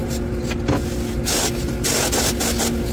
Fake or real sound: real